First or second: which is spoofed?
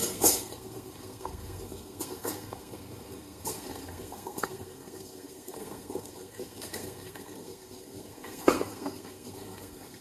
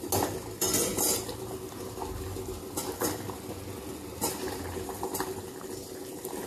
first